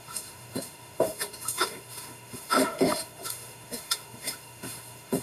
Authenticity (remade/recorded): remade